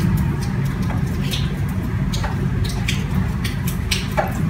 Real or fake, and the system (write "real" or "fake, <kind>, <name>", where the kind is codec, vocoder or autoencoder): real